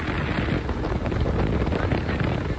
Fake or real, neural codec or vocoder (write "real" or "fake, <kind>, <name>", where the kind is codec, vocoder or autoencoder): real